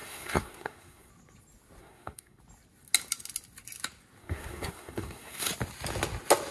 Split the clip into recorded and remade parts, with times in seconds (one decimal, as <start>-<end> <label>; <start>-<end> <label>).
0.0-1.1 remade; 1.1-1.8 recorded; 1.8-2.4 remade; 2.4-4.2 recorded; 4.2-5.5 remade; 5.5-6.5 recorded

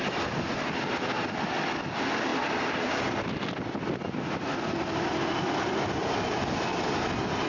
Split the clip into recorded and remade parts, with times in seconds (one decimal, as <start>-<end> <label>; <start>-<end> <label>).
0.0-7.5 recorded